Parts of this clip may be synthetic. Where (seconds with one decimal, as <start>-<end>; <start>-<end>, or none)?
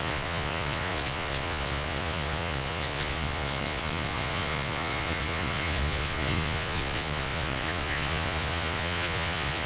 0.0-9.7